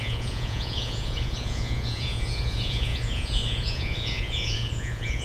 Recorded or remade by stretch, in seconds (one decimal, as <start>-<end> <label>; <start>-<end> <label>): 0.0-5.2 remade